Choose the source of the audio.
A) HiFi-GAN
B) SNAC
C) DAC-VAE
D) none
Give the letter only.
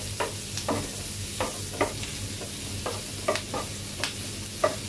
D